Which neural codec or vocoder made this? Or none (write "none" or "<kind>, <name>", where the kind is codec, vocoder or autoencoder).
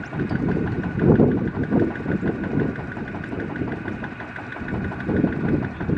none